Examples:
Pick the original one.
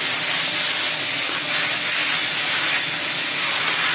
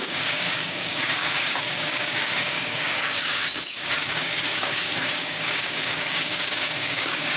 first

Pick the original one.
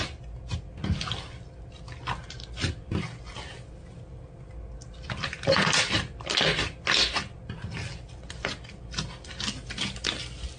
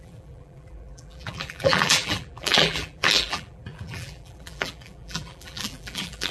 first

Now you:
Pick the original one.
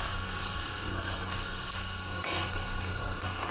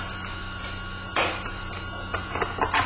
second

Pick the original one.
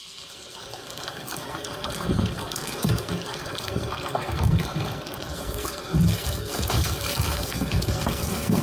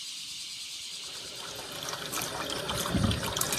second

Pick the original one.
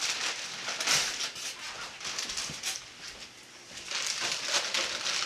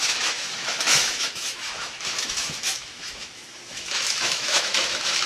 first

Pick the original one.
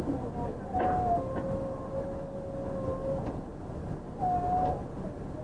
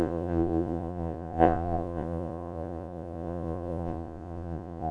first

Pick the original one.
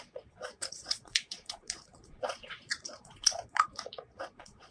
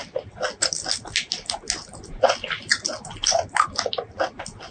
second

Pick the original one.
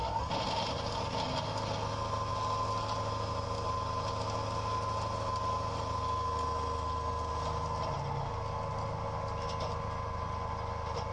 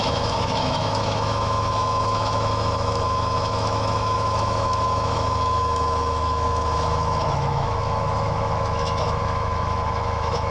first